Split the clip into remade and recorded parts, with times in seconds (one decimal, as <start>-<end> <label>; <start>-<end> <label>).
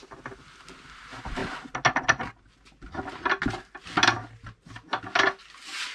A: 0.0-5.9 recorded